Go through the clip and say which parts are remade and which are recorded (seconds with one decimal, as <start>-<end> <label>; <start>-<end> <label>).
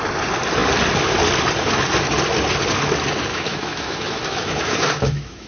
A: 0.0-3.3 recorded; 3.3-5.5 remade